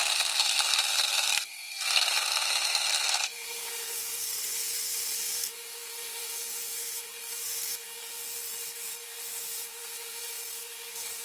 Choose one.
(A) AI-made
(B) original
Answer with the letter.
A